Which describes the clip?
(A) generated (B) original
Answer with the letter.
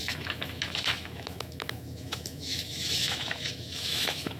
A